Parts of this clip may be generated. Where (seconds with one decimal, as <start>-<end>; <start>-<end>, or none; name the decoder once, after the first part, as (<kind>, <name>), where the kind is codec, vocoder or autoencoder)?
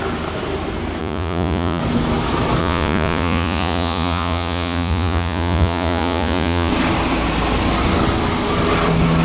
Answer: 1.0-1.8 (vocoder, Vocos); 2.6-6.7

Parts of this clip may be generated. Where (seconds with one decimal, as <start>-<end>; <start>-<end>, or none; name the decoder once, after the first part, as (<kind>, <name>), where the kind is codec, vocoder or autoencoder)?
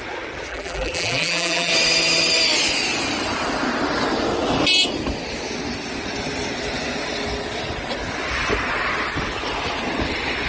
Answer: 0.5-1.7 (vocoder, BigVGAN v2)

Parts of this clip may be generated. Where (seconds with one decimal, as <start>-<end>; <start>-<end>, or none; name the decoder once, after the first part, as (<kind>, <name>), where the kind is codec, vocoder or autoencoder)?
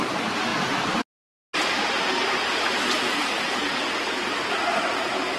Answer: none